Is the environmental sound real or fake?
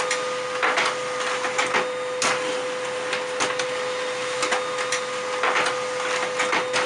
real